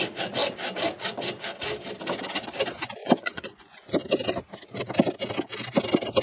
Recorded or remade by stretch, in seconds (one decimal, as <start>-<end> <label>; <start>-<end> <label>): 0.0-3.0 recorded; 3.0-3.9 remade; 3.9-6.2 recorded